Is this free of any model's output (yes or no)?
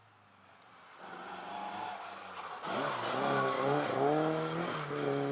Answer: yes